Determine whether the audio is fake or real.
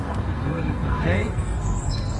fake